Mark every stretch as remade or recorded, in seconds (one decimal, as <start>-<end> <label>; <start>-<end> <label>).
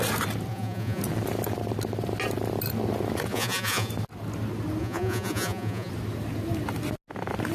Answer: 0.0-0.5 recorded; 0.5-1.0 remade; 1.0-3.3 recorded; 3.3-3.9 remade; 3.9-4.8 recorded; 4.8-5.9 remade; 5.9-7.5 recorded